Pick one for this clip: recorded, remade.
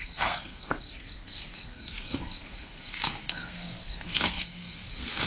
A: remade